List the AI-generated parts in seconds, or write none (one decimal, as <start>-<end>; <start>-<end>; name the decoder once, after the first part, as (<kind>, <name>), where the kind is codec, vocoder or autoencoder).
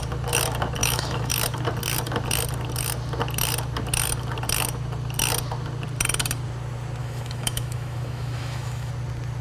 0.8-1.3 (autoencoder, DAC-VAE); 7.0-8.9